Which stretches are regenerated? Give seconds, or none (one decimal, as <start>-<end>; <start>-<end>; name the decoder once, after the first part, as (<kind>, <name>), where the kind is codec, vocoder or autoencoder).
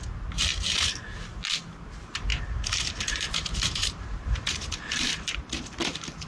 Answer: 2.3-6.3 (vocoder, BigVGAN v2)